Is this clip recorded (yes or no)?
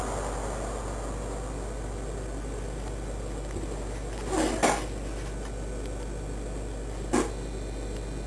yes